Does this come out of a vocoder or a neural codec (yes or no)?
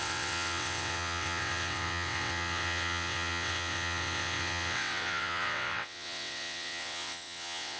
yes